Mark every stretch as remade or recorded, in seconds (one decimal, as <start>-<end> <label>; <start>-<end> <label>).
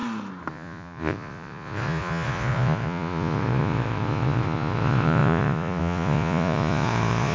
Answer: 0.0-0.5 recorded; 0.5-7.3 remade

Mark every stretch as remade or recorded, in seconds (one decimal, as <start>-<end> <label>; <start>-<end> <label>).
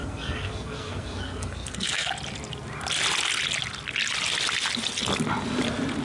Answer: 0.0-2.1 remade; 2.1-6.0 recorded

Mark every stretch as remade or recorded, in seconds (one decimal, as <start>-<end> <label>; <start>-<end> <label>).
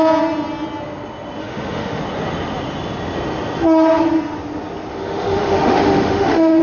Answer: 0.0-1.4 recorded; 1.4-2.0 remade; 2.0-4.9 recorded; 4.9-6.6 remade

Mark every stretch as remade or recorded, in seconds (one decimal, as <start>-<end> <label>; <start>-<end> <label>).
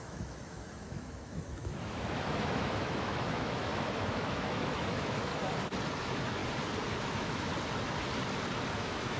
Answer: 0.0-5.3 remade; 5.3-6.0 recorded; 6.0-6.4 remade; 6.4-7.0 recorded; 7.0-7.5 remade; 7.5-8.7 recorded; 8.7-9.2 remade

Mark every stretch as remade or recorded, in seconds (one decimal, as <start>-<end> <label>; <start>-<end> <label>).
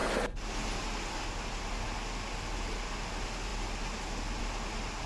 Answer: 0.0-5.1 recorded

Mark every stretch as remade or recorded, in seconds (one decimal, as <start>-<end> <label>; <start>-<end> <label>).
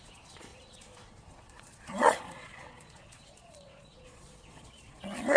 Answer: 0.0-5.4 remade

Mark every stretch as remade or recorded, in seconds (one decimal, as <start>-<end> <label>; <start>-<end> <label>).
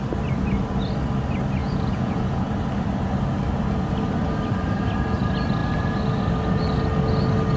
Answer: 0.0-1.6 recorded; 1.6-2.4 remade; 2.4-7.6 recorded